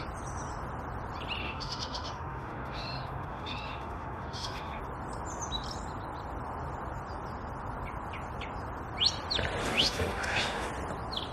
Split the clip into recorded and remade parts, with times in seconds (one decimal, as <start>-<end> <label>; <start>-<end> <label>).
0.0-1.4 recorded; 1.4-4.8 remade; 4.8-9.6 recorded; 9.6-10.7 remade; 10.7-11.3 recorded